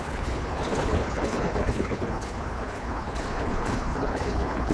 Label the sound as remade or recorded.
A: remade